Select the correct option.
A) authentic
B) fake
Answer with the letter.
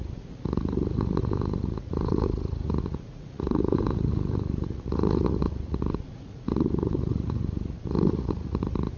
B